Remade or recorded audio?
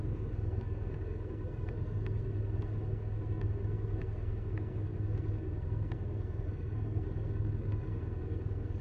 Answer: remade